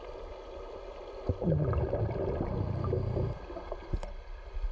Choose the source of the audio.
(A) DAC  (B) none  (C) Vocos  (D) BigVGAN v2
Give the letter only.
B